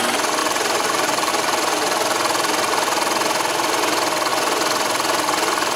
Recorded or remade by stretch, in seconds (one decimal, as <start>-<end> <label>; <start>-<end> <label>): 0.0-0.4 recorded; 0.4-1.3 remade; 1.3-5.8 recorded